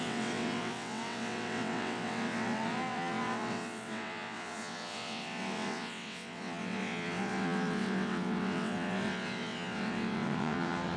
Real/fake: fake